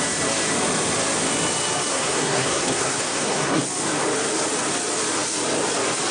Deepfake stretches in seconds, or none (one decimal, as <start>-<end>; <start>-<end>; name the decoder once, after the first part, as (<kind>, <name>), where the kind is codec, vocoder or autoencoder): 1.9-3.6 (codec, SNAC)